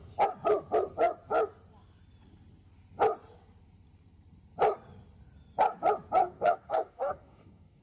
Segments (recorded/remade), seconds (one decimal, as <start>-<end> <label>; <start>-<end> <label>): 0.0-6.2 recorded; 6.2-7.8 remade